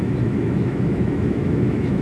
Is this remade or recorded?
remade